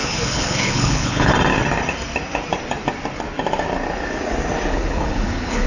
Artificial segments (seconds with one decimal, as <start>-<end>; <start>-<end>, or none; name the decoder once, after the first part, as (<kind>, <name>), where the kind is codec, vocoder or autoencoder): 0.0-1.3 (codec, HILCodec); 4.7-5.7